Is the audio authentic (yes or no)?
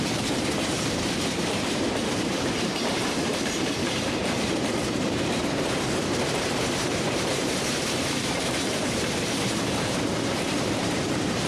no